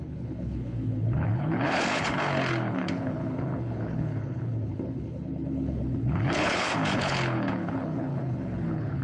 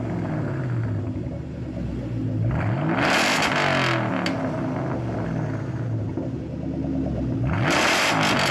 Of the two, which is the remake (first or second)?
first